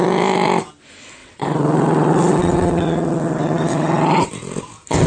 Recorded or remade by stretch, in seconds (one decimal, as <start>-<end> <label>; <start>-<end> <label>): 0.0-1.2 recorded; 1.2-4.3 remade; 4.3-5.1 recorded